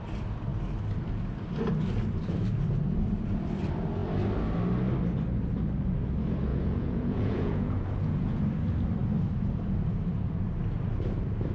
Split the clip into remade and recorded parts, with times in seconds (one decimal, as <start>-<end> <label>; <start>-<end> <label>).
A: 0.0-6.5 recorded; 6.5-8.4 remade; 8.4-11.5 recorded